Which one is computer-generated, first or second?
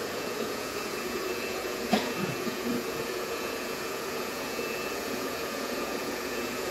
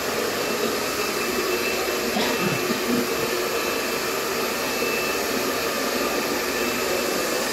first